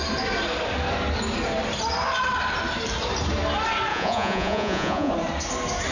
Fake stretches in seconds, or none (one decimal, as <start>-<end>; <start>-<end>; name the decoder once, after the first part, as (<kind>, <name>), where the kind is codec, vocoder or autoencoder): 3.9-5.1 (vocoder, Vocos)